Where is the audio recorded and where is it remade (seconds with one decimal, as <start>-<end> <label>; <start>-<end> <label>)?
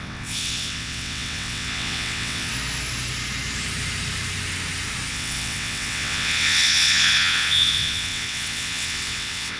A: 0.0-2.5 remade; 2.5-5.1 recorded; 5.1-9.6 remade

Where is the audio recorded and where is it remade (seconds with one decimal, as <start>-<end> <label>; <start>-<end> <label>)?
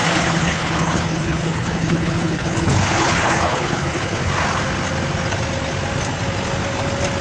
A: 0.0-4.3 remade; 4.3-7.2 recorded